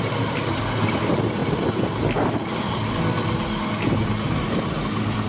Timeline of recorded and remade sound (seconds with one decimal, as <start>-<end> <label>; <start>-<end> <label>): 0.0-5.3 recorded